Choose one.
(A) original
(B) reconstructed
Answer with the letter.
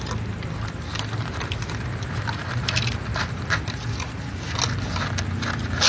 A